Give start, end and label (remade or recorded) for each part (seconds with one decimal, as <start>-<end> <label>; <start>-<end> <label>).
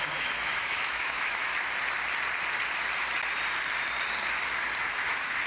0.0-1.5 remade; 1.5-4.8 recorded; 4.8-5.5 remade